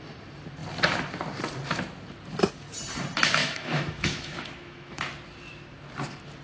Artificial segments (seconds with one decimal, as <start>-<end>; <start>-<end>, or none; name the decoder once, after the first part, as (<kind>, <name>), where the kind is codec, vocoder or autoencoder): 3.4-5.0 (autoencoder, DAC-VAE)